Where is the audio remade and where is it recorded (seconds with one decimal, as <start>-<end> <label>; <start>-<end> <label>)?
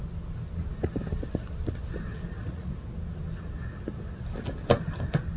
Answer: 0.0-2.1 recorded; 2.1-2.7 remade; 2.7-5.4 recorded